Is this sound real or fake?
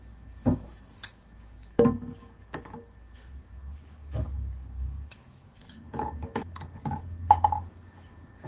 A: fake